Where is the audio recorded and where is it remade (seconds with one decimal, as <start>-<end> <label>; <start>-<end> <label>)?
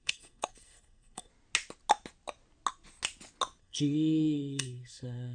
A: 0.0-1.3 remade; 1.3-3.6 recorded; 3.6-5.3 remade